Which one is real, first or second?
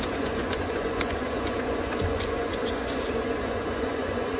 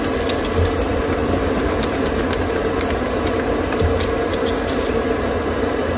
second